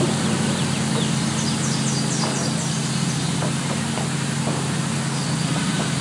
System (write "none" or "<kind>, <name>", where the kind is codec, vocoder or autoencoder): none